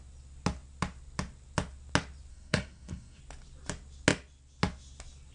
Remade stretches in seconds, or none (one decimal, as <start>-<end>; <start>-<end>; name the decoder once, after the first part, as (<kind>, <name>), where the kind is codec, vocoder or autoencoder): 2.3-3.2 (codec, SNAC)